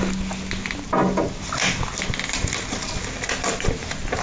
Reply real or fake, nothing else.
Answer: real